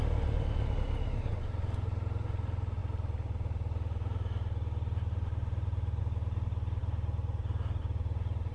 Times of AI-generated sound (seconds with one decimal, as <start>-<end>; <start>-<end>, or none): none